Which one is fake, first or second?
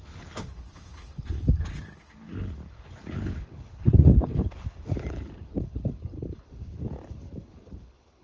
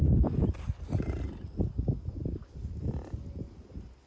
first